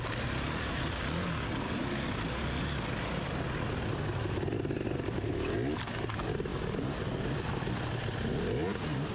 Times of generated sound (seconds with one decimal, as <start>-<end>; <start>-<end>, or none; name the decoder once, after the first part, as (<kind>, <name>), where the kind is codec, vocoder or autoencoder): none